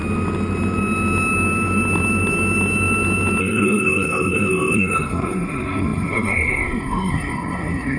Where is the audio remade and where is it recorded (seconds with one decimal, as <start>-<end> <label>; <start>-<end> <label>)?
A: 0.0-3.4 recorded; 3.4-8.0 remade